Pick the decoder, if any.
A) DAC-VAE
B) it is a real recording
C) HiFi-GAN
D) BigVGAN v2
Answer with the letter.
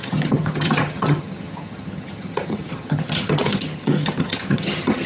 C